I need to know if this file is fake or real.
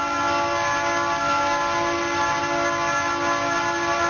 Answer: real